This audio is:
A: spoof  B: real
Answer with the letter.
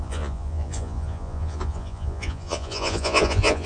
A